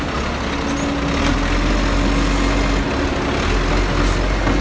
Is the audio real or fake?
real